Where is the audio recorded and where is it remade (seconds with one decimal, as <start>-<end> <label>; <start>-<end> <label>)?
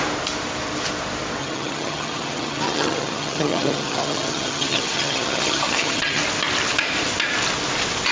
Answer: 0.0-1.4 recorded; 1.4-6.2 remade; 6.2-8.1 recorded